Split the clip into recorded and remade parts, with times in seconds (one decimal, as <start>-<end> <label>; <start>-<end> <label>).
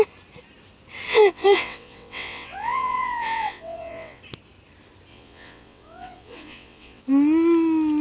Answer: 0.0-1.1 recorded; 1.1-4.2 remade; 4.2-5.1 recorded; 5.1-7.0 remade; 7.0-8.0 recorded